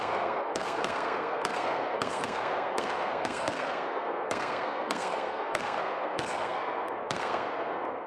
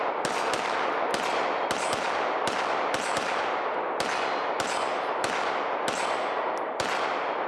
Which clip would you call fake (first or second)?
first